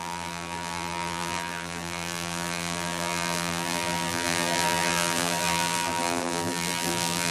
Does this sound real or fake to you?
fake